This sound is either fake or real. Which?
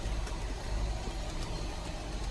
real